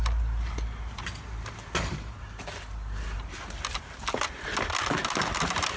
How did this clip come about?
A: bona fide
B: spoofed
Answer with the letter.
A